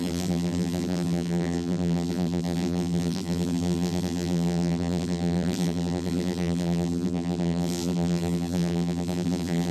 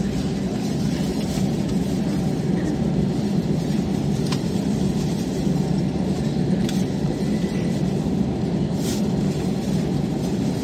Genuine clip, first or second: second